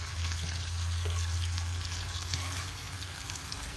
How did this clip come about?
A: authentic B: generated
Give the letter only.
B